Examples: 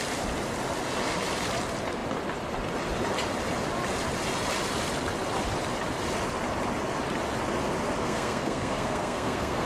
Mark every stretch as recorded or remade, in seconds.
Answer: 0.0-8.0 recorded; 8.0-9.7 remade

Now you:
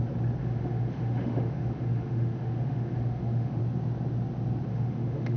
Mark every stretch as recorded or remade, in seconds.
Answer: 0.0-0.4 recorded; 0.4-3.6 remade; 3.6-4.7 recorded; 4.7-5.4 remade

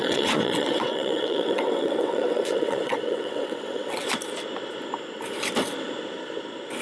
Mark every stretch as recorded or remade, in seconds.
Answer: 0.0-4.1 remade; 4.1-6.8 recorded

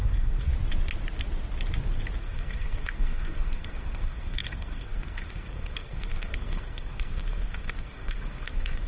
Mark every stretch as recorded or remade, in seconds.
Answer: 0.0-0.5 remade; 0.5-2.2 recorded; 2.2-8.9 remade